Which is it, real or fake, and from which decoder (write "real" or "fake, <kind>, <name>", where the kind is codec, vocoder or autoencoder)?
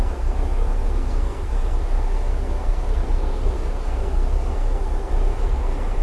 fake, codec, SNAC